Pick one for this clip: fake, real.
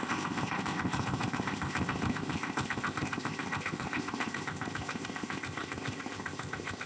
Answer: fake